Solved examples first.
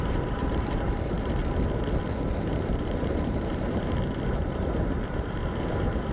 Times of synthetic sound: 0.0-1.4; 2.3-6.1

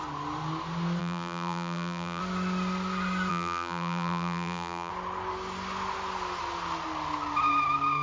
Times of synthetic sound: 1.0-2.2; 3.3-4.9

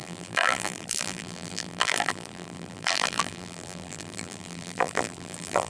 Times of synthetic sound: 0.0-5.7